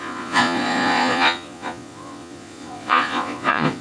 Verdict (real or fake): fake